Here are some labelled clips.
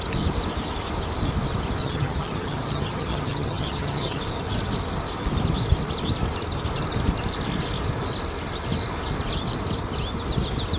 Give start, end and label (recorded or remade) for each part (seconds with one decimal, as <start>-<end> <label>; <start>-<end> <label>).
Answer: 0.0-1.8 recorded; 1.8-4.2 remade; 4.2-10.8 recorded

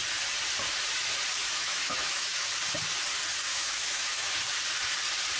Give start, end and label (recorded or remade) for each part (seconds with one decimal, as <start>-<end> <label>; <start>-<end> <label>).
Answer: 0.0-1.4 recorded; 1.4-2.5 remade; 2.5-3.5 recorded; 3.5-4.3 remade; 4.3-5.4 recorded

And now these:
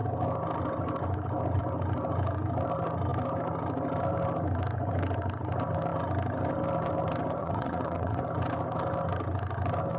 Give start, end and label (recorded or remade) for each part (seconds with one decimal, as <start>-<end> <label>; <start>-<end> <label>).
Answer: 0.0-7.4 recorded; 7.4-8.2 remade; 8.2-10.0 recorded